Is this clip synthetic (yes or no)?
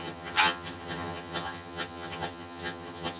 yes